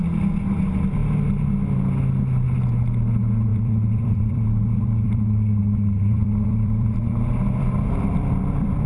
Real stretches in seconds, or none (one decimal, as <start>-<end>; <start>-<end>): 0.0-3.5